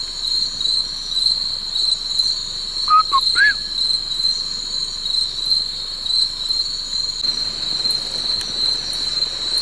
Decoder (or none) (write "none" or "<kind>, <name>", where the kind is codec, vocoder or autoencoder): none